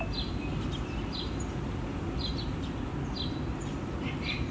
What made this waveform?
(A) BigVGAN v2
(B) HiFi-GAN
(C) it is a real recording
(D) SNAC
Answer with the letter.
C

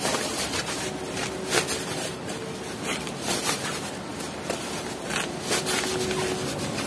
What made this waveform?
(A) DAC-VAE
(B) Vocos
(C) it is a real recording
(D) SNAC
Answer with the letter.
C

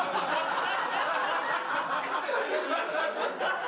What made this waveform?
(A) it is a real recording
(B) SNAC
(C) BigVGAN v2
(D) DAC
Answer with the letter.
A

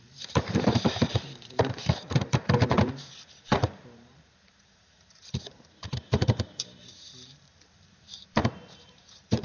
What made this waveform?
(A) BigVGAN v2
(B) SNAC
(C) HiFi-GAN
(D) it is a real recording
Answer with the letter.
A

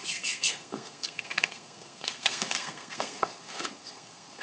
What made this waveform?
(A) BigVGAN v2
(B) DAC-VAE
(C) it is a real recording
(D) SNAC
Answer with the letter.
D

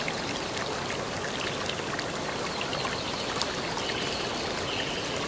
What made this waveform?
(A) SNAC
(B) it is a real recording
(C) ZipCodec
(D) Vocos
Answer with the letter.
B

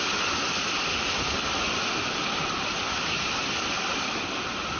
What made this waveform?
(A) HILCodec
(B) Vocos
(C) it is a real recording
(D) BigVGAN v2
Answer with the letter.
C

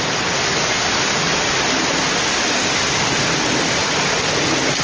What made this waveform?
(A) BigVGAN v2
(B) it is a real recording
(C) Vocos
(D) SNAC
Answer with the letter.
B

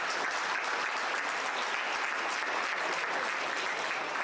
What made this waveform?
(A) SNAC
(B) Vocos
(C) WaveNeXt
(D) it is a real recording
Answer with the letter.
D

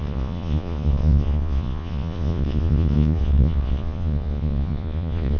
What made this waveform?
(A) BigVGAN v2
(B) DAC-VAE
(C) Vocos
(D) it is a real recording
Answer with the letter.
C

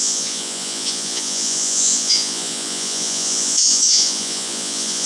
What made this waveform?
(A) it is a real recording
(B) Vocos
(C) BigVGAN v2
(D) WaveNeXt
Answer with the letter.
B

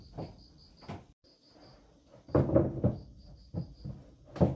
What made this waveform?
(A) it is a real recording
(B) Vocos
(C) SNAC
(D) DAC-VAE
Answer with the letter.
A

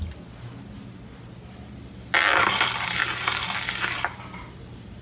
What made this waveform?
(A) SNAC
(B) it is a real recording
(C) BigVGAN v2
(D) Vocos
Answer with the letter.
B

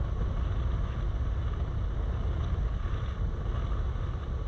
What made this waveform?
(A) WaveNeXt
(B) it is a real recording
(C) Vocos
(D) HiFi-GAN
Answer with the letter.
B